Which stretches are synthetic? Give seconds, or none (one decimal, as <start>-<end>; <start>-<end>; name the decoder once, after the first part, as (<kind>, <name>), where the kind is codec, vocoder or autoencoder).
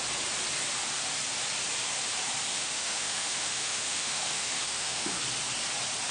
2.5-5.2 (autoencoder, DAC-VAE)